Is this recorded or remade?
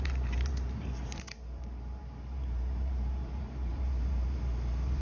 remade